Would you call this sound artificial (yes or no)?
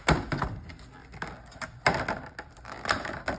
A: no